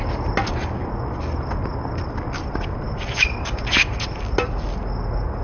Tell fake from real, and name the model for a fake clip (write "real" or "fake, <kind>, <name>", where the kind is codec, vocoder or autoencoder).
real